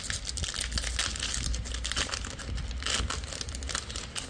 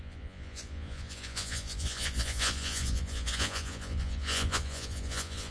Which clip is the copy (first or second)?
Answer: second